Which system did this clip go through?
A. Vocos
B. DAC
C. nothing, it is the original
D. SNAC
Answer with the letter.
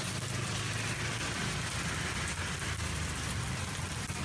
C